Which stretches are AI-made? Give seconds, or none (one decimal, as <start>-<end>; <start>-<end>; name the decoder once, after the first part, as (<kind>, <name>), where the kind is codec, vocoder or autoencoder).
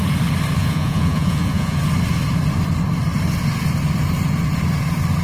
0.6-1.8 (vocoder, Vocos)